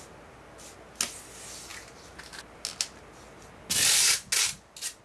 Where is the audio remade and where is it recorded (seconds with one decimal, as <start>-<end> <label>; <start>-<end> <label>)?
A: 0.0-5.0 recorded